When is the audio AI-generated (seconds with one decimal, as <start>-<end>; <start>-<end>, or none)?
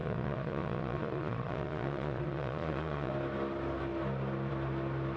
0.0-3.1